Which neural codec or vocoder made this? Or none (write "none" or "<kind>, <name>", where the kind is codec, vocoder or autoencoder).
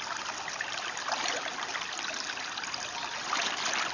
none